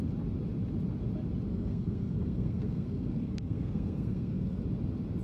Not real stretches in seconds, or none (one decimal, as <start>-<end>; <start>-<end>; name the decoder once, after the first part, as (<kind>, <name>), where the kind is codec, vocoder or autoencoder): 1.5-4.6 (codec, SNAC)